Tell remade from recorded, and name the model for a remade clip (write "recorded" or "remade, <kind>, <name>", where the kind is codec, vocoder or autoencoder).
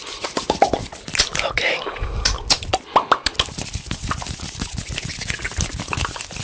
recorded